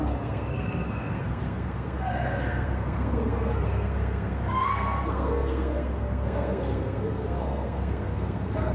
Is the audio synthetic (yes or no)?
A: yes